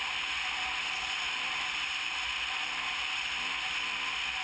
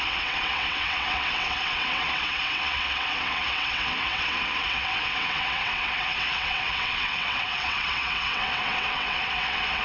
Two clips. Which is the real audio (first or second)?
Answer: first